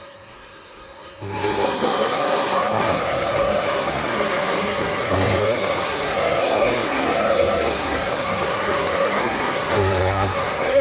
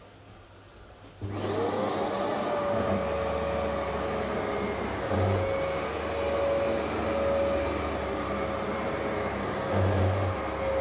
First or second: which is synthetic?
first